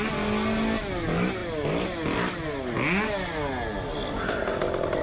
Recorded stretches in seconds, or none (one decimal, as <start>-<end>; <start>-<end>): 0.0-5.0